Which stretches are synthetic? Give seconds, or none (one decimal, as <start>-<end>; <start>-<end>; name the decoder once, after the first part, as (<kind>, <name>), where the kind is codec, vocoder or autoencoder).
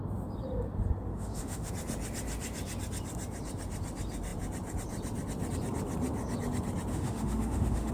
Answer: 1.1-1.7 (autoencoder, DAC-VAE); 6.9-7.9